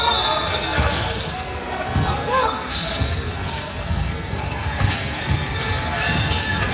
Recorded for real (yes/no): no